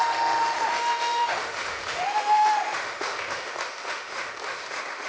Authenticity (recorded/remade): remade